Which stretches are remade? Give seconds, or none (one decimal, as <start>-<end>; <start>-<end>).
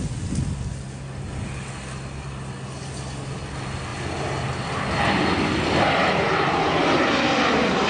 none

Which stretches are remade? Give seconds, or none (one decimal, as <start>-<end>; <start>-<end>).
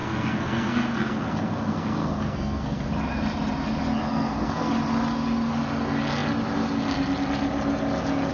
0.0-2.9; 4.1-4.7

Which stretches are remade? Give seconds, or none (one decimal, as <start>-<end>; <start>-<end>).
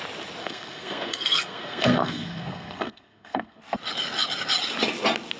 0.4-3.6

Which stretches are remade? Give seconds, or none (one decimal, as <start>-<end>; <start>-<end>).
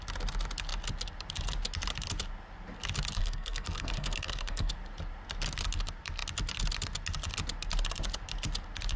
3.2-4.7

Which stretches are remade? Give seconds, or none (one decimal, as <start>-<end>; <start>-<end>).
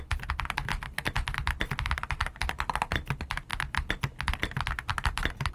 none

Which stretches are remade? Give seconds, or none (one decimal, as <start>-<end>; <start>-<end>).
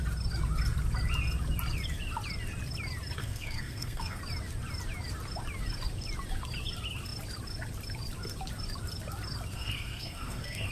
3.2-4.2; 9.5-10.7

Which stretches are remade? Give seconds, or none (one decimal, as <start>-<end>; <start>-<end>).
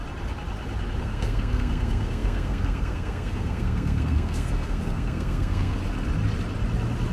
1.0-5.8